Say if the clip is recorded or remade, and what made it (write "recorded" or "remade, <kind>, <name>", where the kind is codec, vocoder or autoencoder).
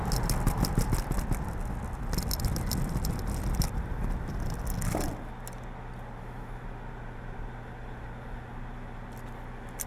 recorded